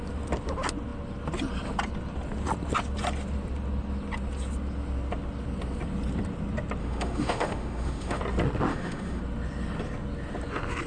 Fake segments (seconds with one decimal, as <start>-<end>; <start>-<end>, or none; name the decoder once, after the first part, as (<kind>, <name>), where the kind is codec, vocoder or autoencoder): 6.8-8.2 (autoencoder, DAC-VAE); 8.7-9.2